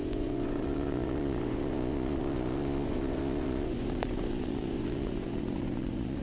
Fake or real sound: fake